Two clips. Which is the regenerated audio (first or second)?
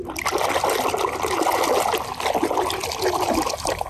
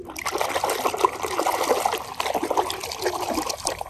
second